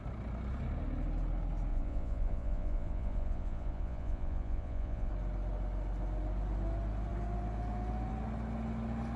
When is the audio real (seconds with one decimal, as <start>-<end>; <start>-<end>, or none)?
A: 0.0-1.7; 5.1-9.2